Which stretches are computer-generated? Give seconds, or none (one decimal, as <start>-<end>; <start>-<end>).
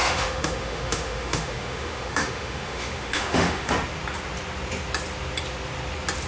0.0-3.7